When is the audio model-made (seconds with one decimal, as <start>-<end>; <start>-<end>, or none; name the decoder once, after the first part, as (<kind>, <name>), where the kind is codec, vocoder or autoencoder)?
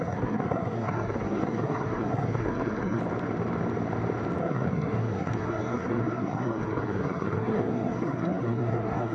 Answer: 0.0-3.0 (codec, SNAC); 4.4-9.1